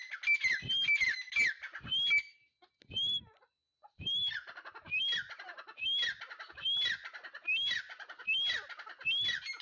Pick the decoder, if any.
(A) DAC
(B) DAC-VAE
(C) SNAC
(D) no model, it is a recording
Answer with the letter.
D